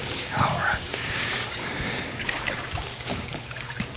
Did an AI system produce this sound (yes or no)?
yes